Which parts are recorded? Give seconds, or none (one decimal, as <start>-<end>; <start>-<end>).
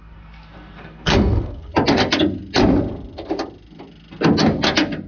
1.7-5.1